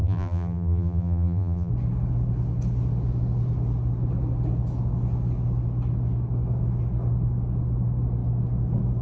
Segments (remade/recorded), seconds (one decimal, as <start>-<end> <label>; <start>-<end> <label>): 0.0-1.7 remade; 1.7-9.0 recorded